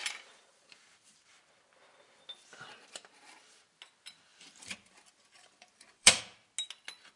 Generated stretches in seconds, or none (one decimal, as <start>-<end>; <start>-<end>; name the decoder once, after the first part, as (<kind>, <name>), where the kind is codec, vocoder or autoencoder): 0.0-1.5 (vocoder, BigVGAN v2); 4.3-6.2